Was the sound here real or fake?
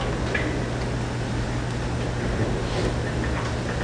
real